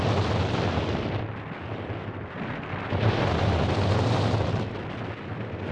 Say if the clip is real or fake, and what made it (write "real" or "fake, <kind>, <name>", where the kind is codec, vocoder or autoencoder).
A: real